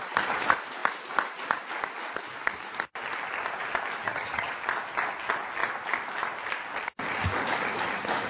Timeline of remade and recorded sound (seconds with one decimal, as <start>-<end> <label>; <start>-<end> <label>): 0.0-4.0 recorded; 4.0-4.5 remade; 4.5-8.3 recorded